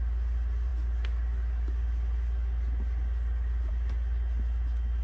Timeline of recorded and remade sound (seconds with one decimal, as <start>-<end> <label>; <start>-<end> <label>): 0.0-5.0 recorded